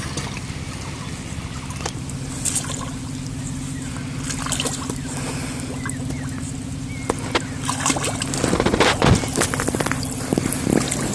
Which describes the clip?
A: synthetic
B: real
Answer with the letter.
B